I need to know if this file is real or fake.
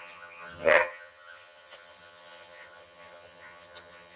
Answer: fake